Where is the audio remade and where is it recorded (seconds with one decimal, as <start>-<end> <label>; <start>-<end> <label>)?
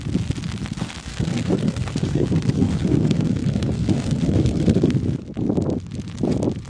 0.0-1.1 recorded; 1.1-4.9 remade; 4.9-6.7 recorded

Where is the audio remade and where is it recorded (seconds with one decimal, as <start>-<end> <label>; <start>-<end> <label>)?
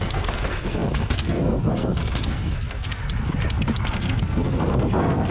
0.0-3.0 remade; 3.0-3.8 recorded; 3.8-5.3 remade